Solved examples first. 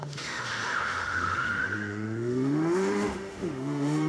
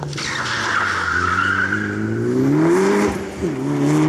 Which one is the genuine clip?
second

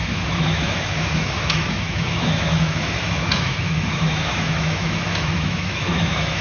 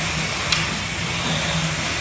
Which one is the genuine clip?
second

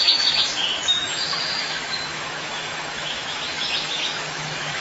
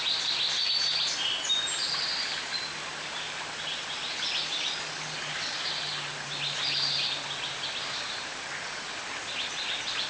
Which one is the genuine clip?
second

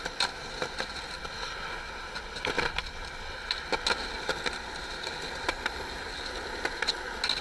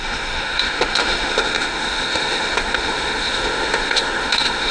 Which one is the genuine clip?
first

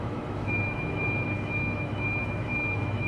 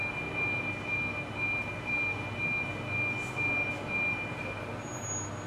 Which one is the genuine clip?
second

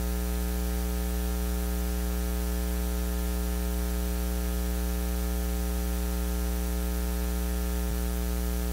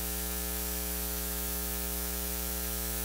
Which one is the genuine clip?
first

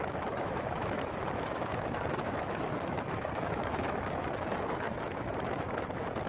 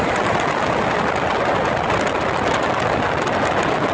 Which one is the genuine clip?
second